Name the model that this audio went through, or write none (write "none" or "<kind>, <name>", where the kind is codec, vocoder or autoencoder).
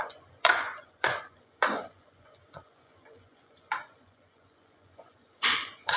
vocoder, Vocos